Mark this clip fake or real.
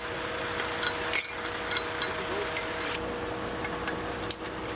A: real